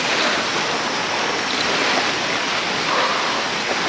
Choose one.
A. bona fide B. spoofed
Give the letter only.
A